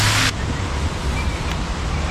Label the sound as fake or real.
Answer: real